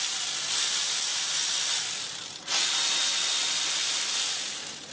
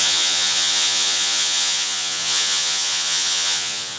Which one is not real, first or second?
second